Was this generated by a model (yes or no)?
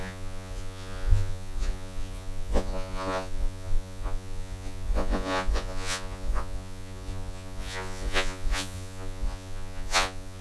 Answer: yes